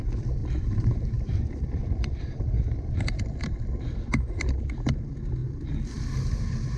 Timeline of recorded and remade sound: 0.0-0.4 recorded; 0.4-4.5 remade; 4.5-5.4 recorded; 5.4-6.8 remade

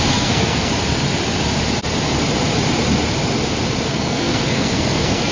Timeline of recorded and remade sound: 0.0-0.7 remade; 0.7-3.9 recorded; 3.9-5.3 remade

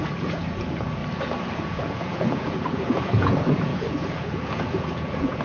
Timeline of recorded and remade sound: 0.0-1.0 remade; 1.0-1.5 recorded; 1.5-5.4 remade

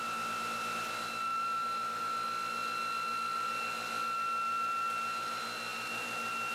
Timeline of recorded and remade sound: 0.0-1.3 recorded; 1.3-2.0 remade; 2.0-5.7 recorded; 5.7-6.5 remade

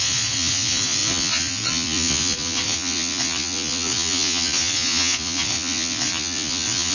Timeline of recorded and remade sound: 0.0-6.9 remade

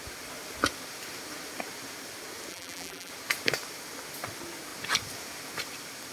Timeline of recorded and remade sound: 0.0-2.5 recorded; 2.5-3.1 remade; 3.1-6.1 recorded

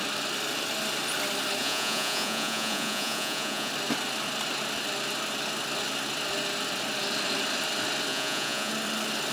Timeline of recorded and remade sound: 0.0-1.6 recorded; 1.6-3.7 remade; 3.7-8.1 recorded; 8.1-8.7 remade; 8.7-9.3 recorded

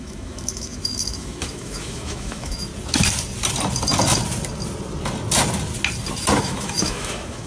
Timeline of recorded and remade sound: 0.0-2.7 remade; 2.7-6.4 recorded; 6.4-7.5 remade